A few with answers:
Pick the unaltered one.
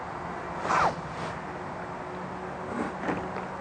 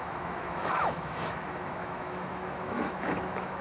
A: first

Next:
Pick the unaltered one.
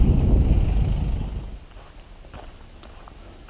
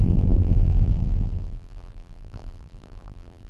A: first